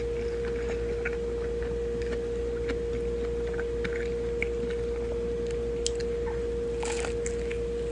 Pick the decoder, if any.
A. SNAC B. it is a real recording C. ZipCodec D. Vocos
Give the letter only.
B